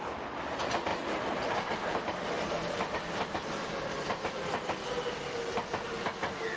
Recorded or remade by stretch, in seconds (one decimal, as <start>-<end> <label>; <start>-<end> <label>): 0.0-0.9 recorded; 0.9-3.5 remade; 3.5-6.6 recorded